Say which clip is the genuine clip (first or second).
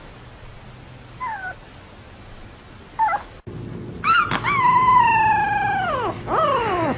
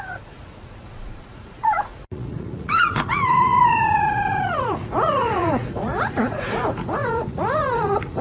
first